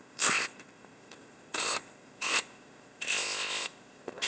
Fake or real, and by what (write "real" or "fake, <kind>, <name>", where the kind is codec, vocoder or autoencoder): fake, codec, ZipCodec